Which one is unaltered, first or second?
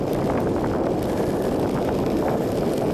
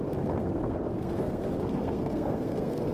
first